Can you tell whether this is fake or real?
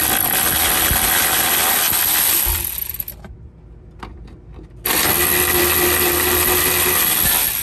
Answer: real